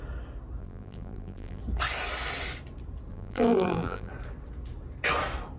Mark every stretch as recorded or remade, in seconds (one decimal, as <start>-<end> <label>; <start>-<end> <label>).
0.0-0.6 recorded; 0.6-1.6 remade; 1.6-3.1 recorded; 3.1-4.1 remade; 4.1-5.6 recorded